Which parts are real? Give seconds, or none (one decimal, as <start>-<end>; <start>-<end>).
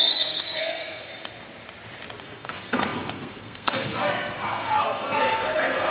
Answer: 1.1-2.2